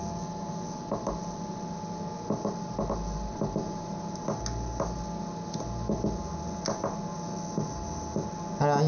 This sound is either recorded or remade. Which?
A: recorded